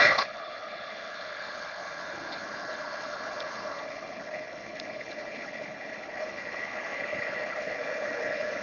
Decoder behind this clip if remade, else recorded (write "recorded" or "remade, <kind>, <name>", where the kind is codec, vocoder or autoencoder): remade, codec, HILCodec